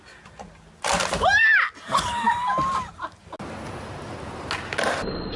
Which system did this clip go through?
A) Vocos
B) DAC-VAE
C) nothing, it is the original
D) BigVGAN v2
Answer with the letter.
C